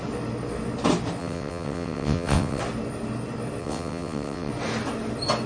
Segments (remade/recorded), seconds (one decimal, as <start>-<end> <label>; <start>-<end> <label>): 0.0-1.2 recorded; 1.2-2.6 remade; 2.6-3.6 recorded; 3.6-4.5 remade; 4.5-5.5 recorded